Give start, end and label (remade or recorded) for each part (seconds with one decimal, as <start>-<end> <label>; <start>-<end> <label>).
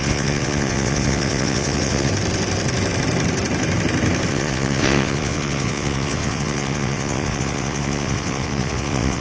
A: 0.0-2.1 remade; 2.1-4.3 recorded; 4.3-9.2 remade